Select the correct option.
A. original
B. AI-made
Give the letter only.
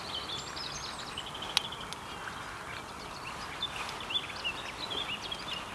A